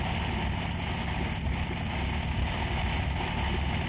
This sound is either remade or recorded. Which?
recorded